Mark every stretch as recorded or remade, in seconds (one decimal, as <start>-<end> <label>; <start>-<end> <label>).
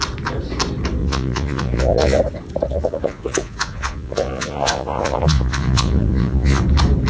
0.0-1.0 recorded; 1.0-2.2 remade; 2.2-2.7 recorded; 2.7-6.6 remade; 6.6-7.1 recorded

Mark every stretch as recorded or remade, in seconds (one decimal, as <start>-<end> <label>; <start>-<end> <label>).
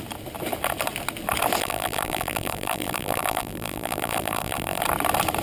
0.0-1.6 recorded; 1.6-4.8 remade; 4.8-5.4 recorded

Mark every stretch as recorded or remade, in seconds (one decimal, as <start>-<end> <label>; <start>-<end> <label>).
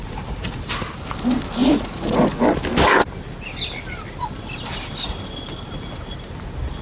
0.0-0.7 remade; 0.7-1.6 recorded; 1.6-2.4 remade; 2.4-6.8 recorded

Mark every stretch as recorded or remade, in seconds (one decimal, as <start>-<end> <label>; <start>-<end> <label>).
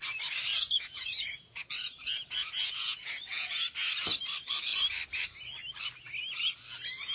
0.0-0.5 recorded; 0.5-3.5 remade; 3.5-7.1 recorded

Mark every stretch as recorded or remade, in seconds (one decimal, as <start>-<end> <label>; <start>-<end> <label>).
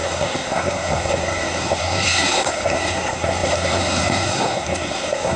0.0-5.4 remade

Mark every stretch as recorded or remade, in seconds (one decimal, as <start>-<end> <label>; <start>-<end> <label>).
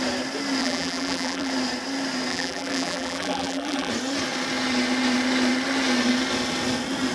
0.0-0.6 recorded; 0.6-1.5 remade; 1.5-2.3 recorded; 2.3-3.9 remade; 3.9-7.1 recorded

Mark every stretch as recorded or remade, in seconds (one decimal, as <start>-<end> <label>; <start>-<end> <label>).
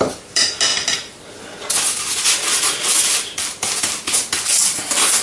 0.0-5.2 recorded